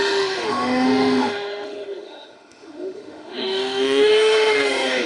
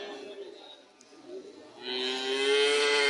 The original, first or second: second